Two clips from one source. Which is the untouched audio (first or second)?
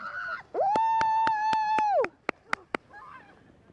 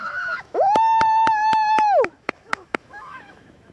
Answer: first